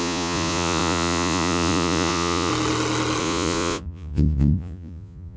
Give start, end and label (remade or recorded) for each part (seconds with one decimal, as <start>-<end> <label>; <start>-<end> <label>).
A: 0.0-2.5 remade; 2.5-3.2 recorded; 3.2-5.4 remade